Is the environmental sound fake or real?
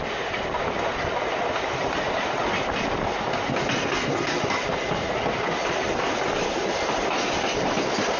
real